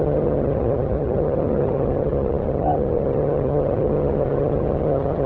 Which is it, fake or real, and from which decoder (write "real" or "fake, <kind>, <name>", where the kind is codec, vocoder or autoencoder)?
fake, vocoder, HiFi-GAN